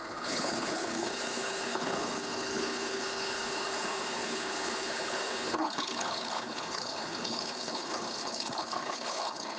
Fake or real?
fake